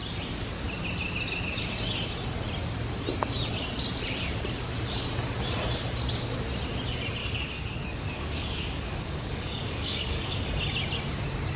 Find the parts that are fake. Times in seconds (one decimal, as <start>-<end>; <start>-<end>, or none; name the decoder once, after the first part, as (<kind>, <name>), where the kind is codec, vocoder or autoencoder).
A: 7.2-10.4 (codec, DAC)